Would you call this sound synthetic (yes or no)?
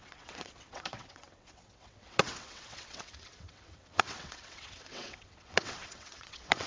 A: yes